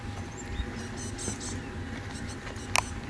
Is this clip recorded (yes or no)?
yes